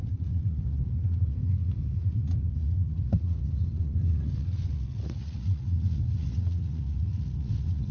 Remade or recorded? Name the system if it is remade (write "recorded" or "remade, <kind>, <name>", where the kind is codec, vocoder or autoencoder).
remade, vocoder, Vocos